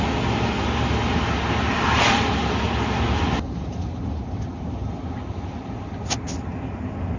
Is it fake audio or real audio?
real